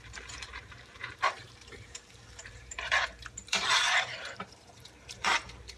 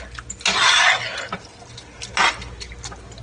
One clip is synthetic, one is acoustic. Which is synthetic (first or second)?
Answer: first